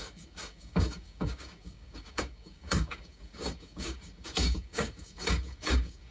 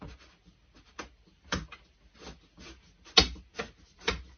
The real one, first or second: second